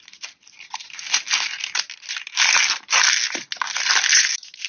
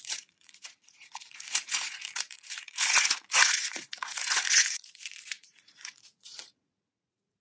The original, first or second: first